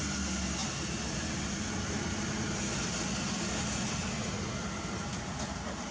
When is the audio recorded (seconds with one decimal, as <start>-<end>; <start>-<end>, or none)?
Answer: 0.0-5.9